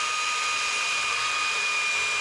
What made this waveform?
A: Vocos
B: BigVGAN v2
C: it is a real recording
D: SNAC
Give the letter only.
C